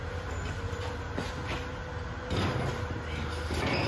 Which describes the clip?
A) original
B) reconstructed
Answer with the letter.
A